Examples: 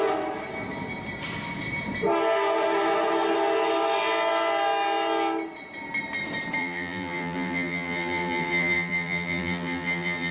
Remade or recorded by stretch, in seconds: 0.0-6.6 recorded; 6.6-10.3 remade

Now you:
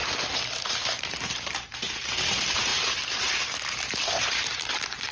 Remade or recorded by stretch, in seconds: 0.0-5.1 remade

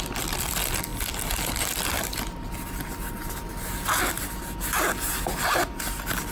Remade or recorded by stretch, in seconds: 0.0-6.3 recorded

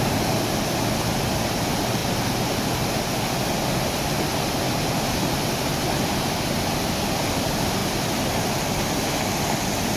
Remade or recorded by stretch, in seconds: 0.0-10.0 recorded

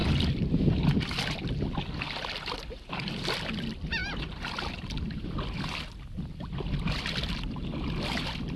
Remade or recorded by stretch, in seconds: 0.0-4.0 recorded; 4.0-5.0 remade; 5.0-8.6 recorded

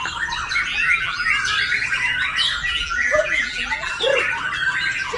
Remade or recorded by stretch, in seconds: 0.0-0.7 recorded; 0.7-1.3 remade; 1.3-2.6 recorded; 2.6-3.9 remade; 3.9-5.2 recorded

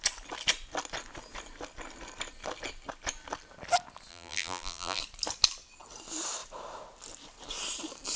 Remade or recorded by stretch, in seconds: 0.0-4.1 recorded; 4.1-5.0 remade; 5.0-8.2 recorded

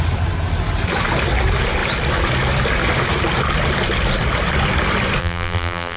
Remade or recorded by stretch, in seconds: 0.0-5.2 recorded; 5.2-6.0 remade